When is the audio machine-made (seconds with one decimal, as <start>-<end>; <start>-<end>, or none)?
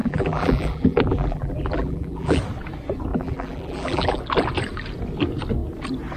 0.0-2.4; 3.1-4.2